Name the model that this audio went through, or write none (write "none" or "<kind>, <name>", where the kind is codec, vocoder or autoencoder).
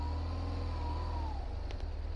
none